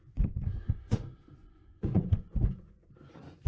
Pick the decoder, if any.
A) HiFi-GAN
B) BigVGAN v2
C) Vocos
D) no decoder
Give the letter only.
C